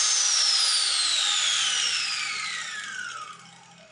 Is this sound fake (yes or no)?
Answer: no